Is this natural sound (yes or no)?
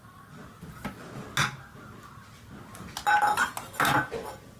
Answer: yes